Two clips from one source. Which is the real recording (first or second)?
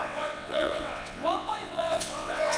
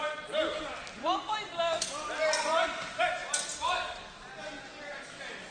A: second